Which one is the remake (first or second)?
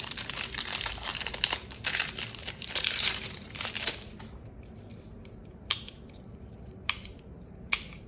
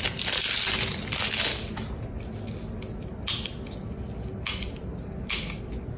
first